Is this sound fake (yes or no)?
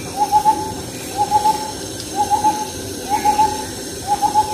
no